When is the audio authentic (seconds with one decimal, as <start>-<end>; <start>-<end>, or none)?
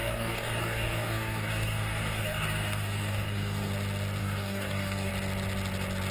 3.7-4.2; 5.1-6.1